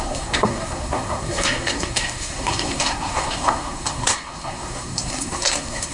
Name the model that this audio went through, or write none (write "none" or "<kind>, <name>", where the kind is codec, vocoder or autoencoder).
codec, SNAC